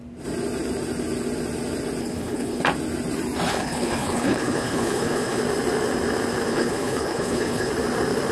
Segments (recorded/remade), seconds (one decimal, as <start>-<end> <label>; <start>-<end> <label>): 0.0-2.0 recorded; 2.0-2.6 remade; 2.6-3.5 recorded; 3.5-5.4 remade; 5.4-6.5 recorded; 6.5-7.7 remade; 7.7-8.3 recorded